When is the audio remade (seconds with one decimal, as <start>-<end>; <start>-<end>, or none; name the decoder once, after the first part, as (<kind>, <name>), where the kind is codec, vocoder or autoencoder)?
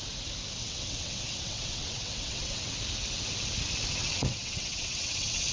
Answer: 0.6-2.7 (vocoder, WaveNeXt); 4.0-5.5